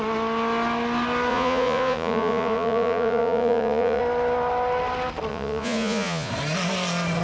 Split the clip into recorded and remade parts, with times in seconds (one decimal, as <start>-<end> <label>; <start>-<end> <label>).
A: 0.0-1.3 recorded; 1.3-4.0 remade; 4.0-5.3 recorded; 5.3-6.3 remade; 6.3-7.2 recorded